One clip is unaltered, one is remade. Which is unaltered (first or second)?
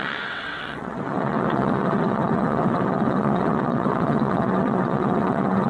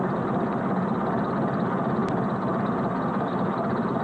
second